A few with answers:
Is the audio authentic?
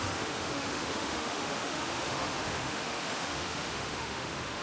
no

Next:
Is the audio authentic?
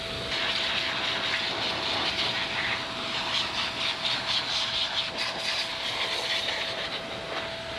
yes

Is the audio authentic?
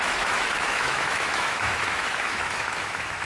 no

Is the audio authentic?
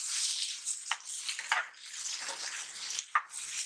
yes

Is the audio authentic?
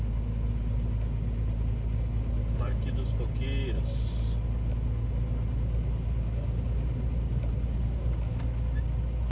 yes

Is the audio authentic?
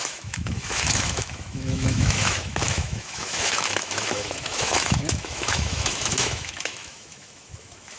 no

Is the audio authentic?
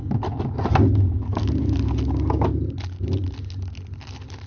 yes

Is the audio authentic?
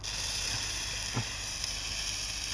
yes